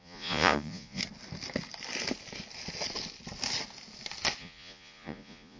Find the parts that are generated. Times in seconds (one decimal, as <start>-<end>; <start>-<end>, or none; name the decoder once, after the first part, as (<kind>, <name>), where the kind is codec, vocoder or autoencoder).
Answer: 0.0-1.0 (vocoder, Vocos); 4.4-5.6